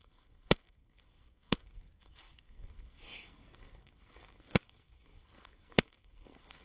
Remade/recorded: remade